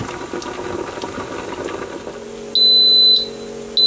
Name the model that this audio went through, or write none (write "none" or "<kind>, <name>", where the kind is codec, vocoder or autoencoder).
none